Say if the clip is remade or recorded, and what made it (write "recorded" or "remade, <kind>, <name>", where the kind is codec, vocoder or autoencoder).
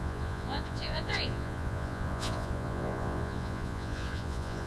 remade, vocoder, Vocos